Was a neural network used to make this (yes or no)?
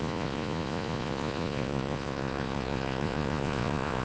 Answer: yes